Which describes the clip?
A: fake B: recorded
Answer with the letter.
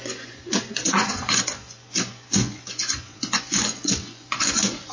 A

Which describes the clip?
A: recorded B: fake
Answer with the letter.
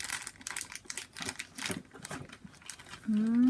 A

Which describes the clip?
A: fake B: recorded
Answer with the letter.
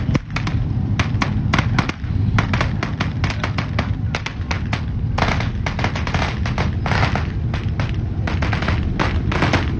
B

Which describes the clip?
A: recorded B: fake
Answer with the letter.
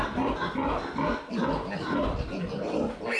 A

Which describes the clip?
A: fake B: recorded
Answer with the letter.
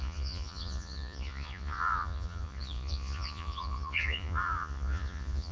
A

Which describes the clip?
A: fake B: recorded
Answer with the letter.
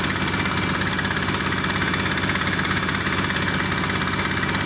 B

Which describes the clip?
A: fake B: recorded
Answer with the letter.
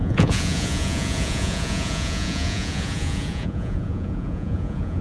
A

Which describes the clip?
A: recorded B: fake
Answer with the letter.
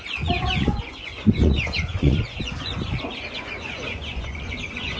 B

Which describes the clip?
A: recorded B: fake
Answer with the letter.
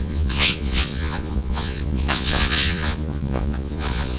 B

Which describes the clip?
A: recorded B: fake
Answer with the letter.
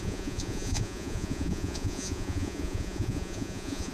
B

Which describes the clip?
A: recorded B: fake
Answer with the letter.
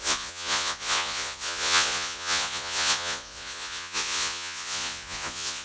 B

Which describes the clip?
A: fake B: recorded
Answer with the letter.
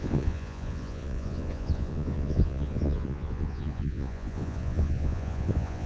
A